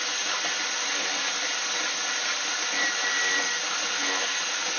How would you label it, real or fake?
real